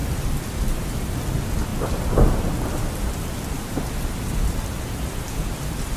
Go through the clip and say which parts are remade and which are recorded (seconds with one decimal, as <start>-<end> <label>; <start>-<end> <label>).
0.0-6.0 recorded